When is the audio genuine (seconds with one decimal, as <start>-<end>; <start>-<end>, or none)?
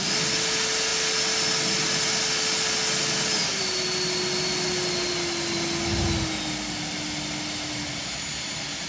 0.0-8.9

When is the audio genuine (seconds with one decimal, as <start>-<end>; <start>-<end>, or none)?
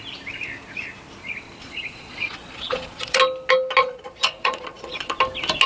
0.0-1.6; 3.2-3.8; 5.2-5.7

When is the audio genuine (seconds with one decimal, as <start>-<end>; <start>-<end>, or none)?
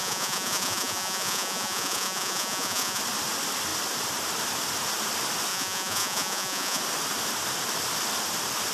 3.0-5.5; 6.8-8.7